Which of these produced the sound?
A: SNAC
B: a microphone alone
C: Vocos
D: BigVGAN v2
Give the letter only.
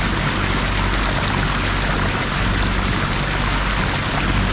B